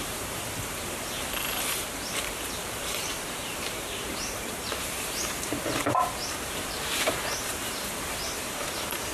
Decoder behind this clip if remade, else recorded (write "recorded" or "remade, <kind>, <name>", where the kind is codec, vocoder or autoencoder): remade, vocoder, BigVGAN v2